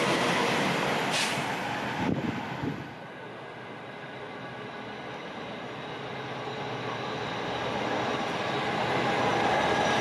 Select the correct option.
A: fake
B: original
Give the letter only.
B